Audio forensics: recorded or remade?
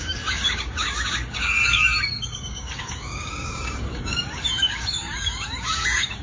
remade